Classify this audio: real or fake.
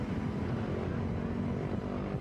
real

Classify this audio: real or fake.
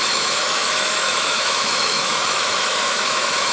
fake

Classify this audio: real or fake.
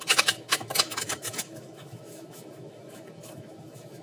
fake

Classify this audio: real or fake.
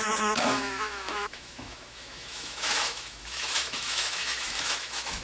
fake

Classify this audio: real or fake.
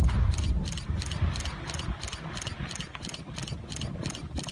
real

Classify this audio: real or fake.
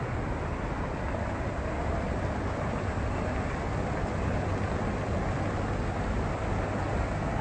real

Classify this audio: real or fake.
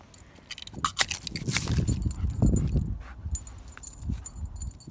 real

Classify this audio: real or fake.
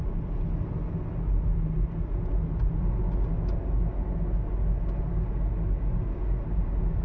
real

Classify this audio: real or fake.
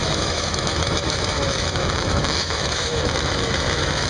fake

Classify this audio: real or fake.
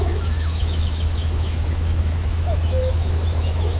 fake